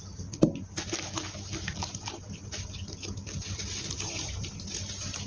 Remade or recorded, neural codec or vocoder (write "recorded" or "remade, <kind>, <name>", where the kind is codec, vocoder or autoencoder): recorded